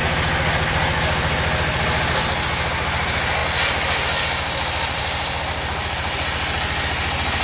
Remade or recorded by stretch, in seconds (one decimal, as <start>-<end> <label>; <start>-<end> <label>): 0.0-7.4 recorded